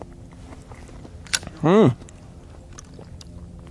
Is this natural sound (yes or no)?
yes